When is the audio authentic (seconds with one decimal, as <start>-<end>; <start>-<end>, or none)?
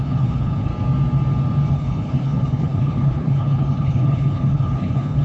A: 0.7-1.7